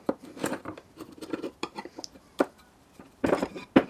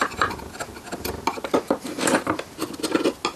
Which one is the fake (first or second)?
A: first